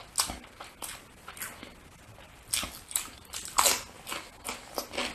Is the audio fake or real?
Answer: real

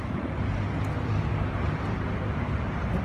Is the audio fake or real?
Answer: real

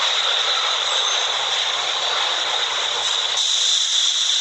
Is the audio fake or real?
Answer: real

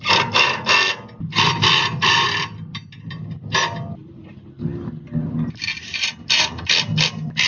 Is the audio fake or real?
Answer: real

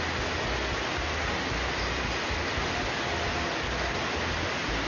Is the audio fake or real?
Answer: real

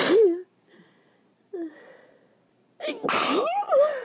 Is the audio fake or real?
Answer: real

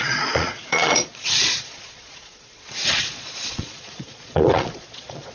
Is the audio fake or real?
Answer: fake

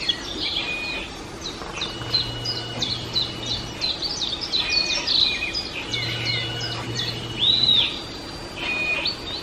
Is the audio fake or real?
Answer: real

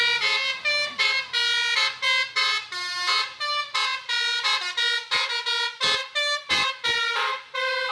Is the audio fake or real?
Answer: real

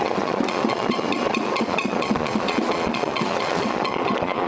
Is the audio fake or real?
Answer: fake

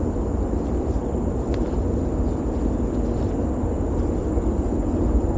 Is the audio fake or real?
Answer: real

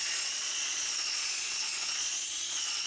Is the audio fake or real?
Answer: fake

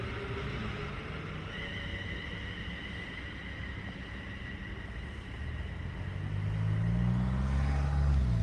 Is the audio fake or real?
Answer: real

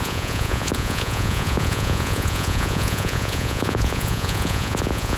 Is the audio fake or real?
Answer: fake